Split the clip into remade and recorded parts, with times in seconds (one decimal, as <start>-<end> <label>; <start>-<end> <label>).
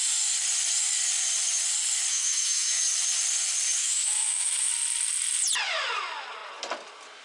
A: 0.0-2.1 recorded; 2.1-2.7 remade; 2.7-3.8 recorded; 3.8-4.7 remade; 4.7-7.2 recorded